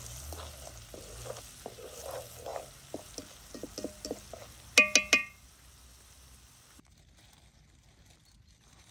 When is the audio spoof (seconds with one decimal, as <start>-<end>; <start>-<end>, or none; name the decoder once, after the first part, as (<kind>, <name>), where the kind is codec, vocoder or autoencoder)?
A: none